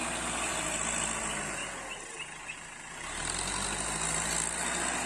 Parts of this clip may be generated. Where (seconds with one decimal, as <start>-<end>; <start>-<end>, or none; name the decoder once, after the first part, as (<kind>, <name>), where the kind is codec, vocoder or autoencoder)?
none